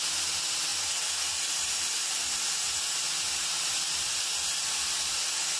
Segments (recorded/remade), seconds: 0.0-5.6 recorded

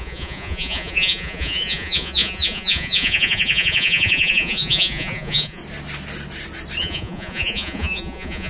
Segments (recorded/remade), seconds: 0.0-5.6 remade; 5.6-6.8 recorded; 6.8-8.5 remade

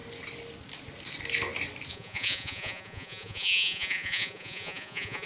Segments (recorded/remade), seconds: 0.0-1.9 recorded; 1.9-5.3 remade

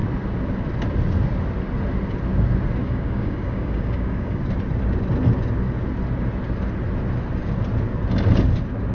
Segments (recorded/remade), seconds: 0.0-2.8 recorded; 2.8-4.4 remade; 4.4-8.9 recorded